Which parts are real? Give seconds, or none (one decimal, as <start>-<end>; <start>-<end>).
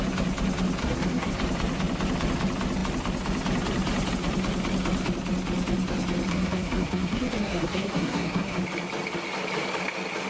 0.0-0.8; 1.3-6.3; 8.6-10.3